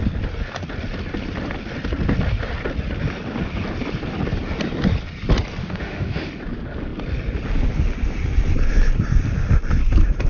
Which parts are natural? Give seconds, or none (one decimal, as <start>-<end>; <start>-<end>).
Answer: 0.0-5.6; 6.3-10.3